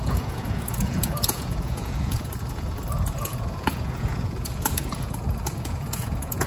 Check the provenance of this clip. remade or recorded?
remade